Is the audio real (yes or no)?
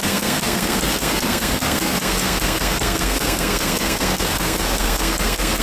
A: no